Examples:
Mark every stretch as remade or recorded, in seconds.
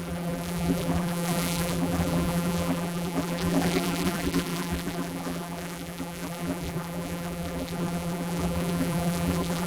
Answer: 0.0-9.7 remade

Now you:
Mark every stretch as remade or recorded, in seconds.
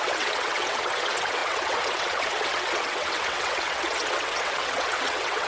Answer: 0.0-5.5 remade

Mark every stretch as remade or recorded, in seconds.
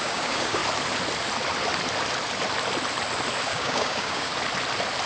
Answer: 0.0-0.6 remade; 0.6-3.4 recorded; 3.4-4.3 remade; 4.3-5.1 recorded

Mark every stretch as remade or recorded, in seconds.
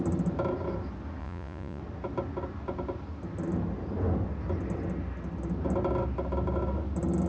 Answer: 0.0-1.2 recorded; 1.2-1.8 remade; 1.8-7.3 recorded